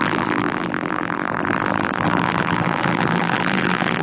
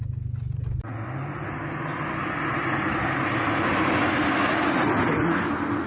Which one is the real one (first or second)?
second